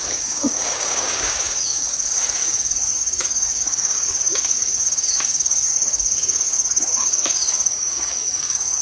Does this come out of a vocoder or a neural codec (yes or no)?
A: yes